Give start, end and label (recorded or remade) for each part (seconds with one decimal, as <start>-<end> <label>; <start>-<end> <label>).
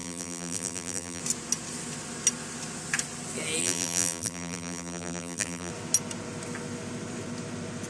0.0-1.2 remade; 1.2-3.6 recorded; 3.6-5.7 remade; 5.7-7.9 recorded